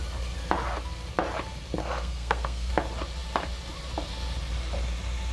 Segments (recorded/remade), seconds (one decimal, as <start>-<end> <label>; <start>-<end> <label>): 0.0-1.8 recorded; 1.8-2.7 remade; 2.7-5.3 recorded